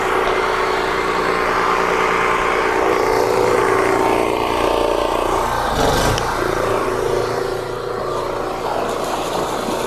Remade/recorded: recorded